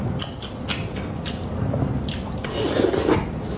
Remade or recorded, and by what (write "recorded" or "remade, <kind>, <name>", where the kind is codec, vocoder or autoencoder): recorded